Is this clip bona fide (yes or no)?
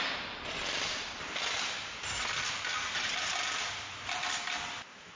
yes